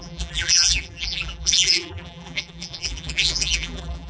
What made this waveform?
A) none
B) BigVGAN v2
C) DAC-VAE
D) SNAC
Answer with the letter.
B